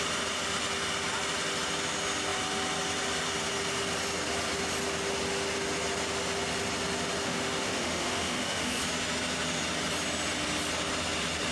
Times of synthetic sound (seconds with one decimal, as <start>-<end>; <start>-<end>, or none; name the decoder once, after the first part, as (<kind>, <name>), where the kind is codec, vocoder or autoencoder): 7.2-8.8 (autoencoder, DAC-VAE)